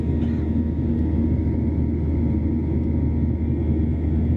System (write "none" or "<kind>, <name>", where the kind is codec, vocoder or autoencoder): none